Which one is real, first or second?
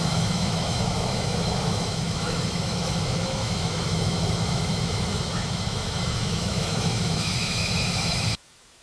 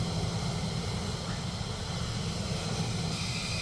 second